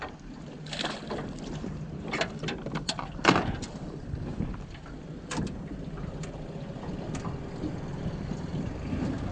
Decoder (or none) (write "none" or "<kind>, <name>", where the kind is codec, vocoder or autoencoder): none